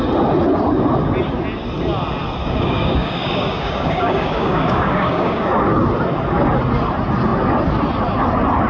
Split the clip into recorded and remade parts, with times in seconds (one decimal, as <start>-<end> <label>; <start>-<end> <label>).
0.0-2.4 recorded; 2.4-5.5 remade; 5.5-8.7 recorded

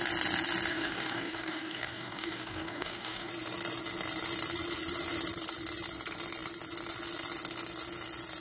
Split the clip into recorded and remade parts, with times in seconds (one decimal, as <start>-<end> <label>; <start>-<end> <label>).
0.0-0.7 recorded; 0.7-3.3 remade; 3.3-8.4 recorded